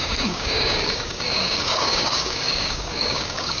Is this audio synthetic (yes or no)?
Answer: yes